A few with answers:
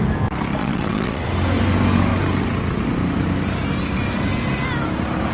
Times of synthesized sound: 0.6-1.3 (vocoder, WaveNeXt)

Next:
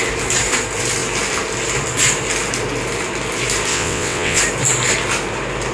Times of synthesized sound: 3.7-4.4 (vocoder, WaveNeXt)

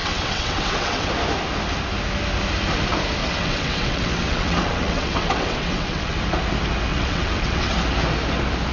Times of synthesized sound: 0.0-1.1 (vocoder, WaveNeXt); 3.2-6.2; 6.9-7.7

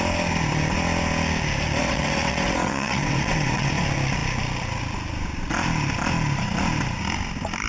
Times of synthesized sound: 1.8-3.7 (vocoder, WaveNeXt)

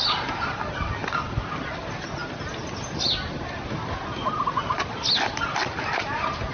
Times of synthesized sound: none

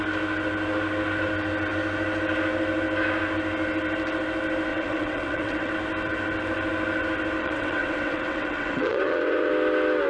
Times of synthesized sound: 4.7-5.7 (vocoder, WaveNeXt); 7.4-9.5